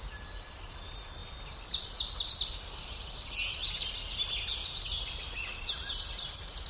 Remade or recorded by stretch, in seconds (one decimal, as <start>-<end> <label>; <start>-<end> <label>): 0.0-1.2 remade; 1.2-2.1 recorded; 2.1-3.6 remade; 3.6-4.7 recorded; 4.7-6.7 remade

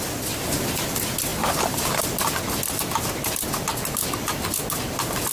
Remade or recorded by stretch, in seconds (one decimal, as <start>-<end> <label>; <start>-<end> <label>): 0.0-5.3 recorded

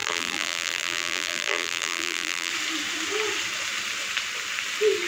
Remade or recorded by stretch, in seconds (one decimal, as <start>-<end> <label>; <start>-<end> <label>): 0.0-2.5 remade; 2.5-5.1 recorded